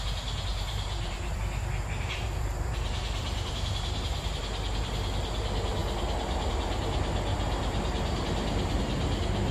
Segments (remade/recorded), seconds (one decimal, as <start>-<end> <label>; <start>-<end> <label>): 0.0-0.5 recorded; 0.5-4.4 remade; 4.4-9.5 recorded